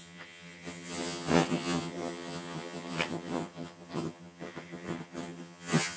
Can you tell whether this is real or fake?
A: fake